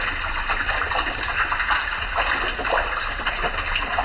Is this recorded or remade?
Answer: recorded